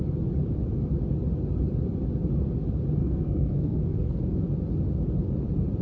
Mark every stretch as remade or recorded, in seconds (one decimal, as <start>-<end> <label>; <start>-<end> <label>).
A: 0.0-3.0 recorded; 3.0-4.2 remade; 4.2-5.8 recorded